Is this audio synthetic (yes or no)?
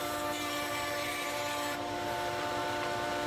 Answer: yes